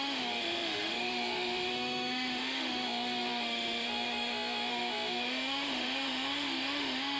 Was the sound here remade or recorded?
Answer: remade